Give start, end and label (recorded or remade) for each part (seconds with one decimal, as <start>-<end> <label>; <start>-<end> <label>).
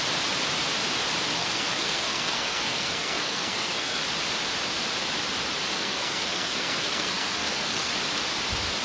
0.0-1.4 recorded; 1.4-4.0 remade; 4.0-5.7 recorded; 5.7-7.9 remade; 7.9-8.8 recorded